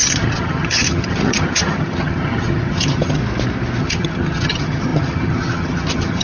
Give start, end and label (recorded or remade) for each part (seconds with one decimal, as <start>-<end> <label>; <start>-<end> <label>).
0.0-3.2 remade; 3.2-3.8 recorded; 3.8-6.2 remade